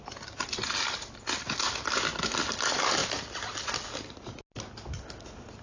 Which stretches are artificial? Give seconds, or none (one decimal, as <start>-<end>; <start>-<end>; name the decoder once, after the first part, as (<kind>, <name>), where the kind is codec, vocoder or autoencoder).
none